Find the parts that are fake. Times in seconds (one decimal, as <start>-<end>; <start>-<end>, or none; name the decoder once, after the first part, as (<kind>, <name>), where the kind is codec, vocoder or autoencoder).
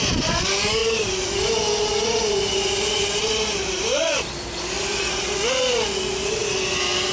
0.8-4.3 (vocoder, BigVGAN v2)